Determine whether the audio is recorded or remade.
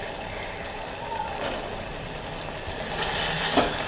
recorded